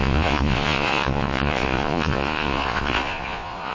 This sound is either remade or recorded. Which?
remade